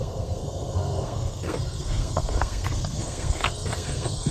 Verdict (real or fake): fake